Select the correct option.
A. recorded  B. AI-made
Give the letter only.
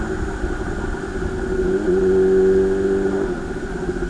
A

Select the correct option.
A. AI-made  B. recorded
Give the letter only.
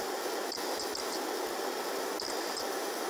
B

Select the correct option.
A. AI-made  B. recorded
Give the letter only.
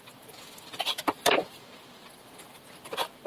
B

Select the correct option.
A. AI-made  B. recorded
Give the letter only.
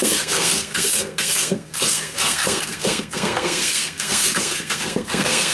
A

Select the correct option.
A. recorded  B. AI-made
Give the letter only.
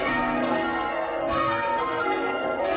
B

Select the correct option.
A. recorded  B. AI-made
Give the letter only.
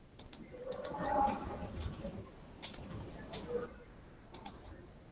A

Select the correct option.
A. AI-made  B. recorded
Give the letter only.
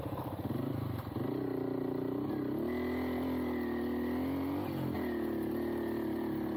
B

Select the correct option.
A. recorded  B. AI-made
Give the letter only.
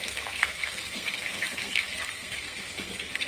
B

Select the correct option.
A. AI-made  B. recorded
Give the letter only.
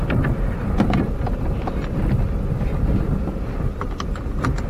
B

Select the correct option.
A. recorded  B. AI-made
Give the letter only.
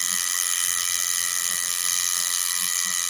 B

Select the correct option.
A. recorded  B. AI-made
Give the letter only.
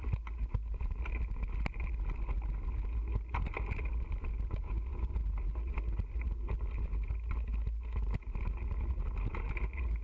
A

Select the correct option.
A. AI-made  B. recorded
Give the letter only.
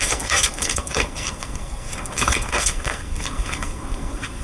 A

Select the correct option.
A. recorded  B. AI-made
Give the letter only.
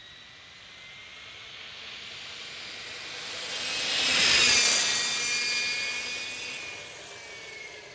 A